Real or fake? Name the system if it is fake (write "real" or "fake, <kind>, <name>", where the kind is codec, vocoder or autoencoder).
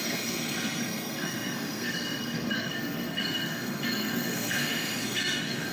fake, codec, SNAC